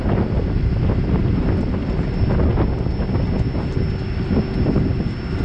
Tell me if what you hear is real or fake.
real